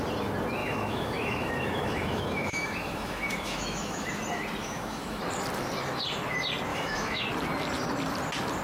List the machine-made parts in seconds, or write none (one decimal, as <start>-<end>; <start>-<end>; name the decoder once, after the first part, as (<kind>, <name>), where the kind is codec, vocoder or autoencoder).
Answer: 0.6-4.1 (autoencoder, DAC-VAE); 4.6-5.2; 6.7-7.2